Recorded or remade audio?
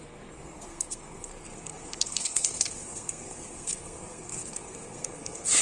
remade